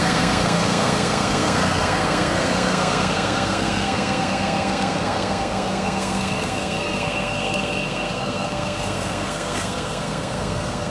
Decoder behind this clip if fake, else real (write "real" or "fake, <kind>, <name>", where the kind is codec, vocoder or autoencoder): fake, codec, SNAC